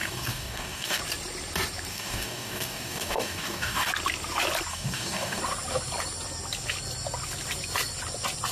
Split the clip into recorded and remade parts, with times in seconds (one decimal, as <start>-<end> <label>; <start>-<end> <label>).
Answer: 0.0-1.0 remade; 1.0-1.9 recorded; 1.9-3.9 remade; 3.9-4.7 recorded; 4.7-5.4 remade; 5.4-8.5 recorded